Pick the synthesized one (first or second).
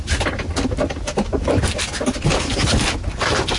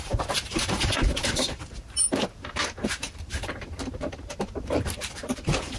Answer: second